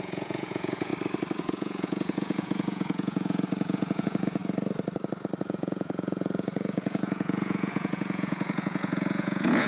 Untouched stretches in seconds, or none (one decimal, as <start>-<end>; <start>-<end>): 0.9-1.4; 4.4-5.4